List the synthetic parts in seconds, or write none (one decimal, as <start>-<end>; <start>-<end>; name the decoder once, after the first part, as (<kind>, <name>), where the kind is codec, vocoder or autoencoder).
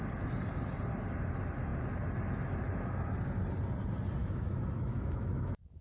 4.2-5.8 (autoencoder, DAC-VAE)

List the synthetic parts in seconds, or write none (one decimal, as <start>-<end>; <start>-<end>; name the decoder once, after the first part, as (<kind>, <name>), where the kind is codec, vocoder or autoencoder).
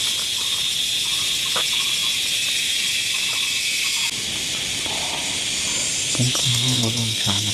6.4-7.5 (codec, SNAC)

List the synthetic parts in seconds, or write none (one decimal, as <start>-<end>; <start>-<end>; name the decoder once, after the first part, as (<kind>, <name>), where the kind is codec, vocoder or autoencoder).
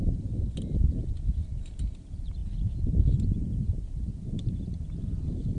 0.0-2.4 (vocoder, BigVGAN v2); 3.2-5.6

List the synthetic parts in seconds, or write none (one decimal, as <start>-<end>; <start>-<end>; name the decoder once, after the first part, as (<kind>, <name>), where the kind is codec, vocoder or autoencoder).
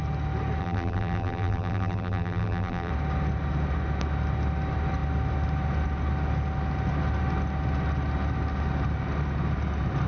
0.6-2.9 (vocoder, BigVGAN v2)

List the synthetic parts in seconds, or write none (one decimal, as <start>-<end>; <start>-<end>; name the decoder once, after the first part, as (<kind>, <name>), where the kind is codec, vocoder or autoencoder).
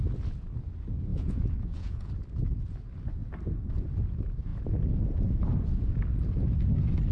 1.1-2.1 (vocoder, Vocos)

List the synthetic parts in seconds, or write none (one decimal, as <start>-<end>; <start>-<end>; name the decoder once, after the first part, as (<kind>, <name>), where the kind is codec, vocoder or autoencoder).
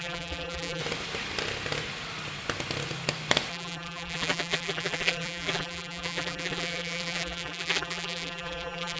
0.0-0.8 (vocoder, BigVGAN v2); 3.5-9.0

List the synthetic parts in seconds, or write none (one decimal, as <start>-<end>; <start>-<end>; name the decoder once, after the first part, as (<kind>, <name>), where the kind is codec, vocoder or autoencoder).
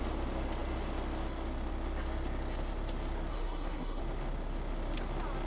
3.3-4.0 (codec, SNAC)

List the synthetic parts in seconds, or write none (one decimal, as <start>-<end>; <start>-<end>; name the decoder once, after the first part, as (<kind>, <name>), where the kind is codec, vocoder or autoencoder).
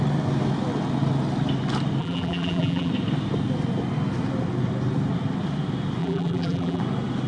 2.0-2.9 (vocoder, BigVGAN v2); 6.0-6.8